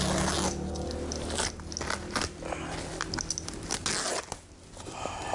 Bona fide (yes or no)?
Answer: yes